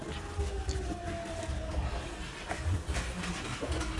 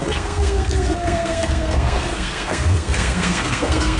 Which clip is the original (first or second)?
first